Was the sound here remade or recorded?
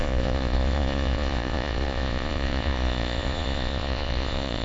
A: remade